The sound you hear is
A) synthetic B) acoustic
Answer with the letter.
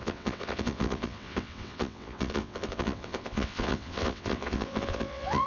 A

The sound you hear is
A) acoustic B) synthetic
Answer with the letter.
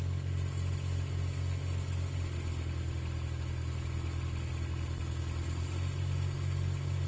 A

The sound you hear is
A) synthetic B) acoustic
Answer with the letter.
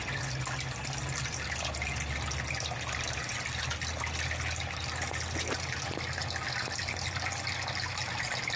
B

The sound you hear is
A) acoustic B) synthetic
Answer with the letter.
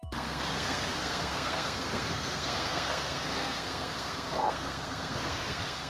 B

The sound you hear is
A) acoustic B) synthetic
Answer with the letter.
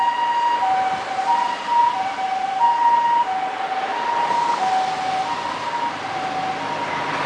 A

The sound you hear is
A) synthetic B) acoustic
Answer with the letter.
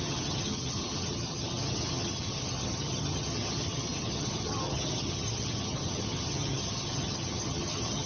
A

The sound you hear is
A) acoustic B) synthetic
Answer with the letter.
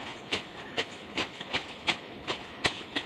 B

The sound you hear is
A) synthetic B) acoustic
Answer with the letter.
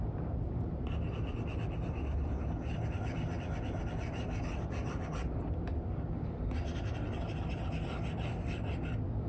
A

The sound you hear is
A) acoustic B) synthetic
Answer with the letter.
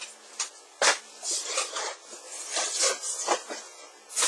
A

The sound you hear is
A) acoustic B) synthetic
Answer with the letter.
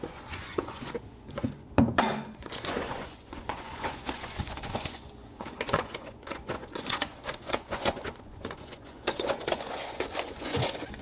B